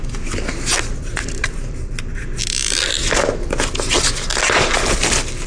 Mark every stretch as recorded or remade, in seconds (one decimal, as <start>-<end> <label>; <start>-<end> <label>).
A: 0.0-0.9 recorded; 0.9-2.2 remade; 2.2-5.5 recorded